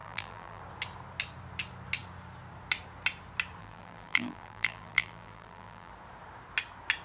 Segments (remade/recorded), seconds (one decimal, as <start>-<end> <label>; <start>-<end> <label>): 0.0-0.6 remade; 0.6-3.6 recorded; 3.6-5.9 remade; 5.9-7.0 recorded